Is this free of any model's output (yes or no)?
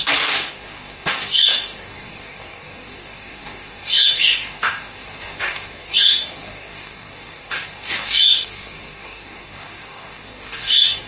no